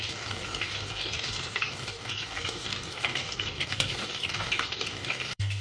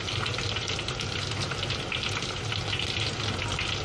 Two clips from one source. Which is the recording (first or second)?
second